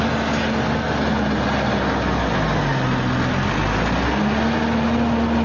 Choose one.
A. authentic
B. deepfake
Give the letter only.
A